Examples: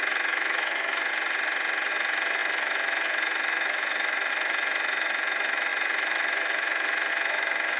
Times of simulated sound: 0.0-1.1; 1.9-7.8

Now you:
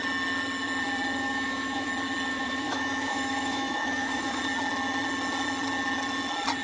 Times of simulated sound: 1.2-1.9; 2.3-4.4

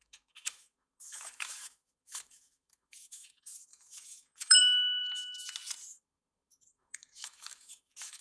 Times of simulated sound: 0.0-5.0; 5.9-8.2

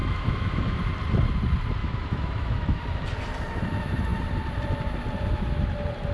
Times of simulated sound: 0.0-0.8; 1.8-2.8

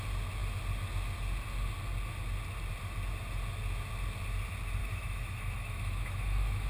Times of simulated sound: 4.8-6.7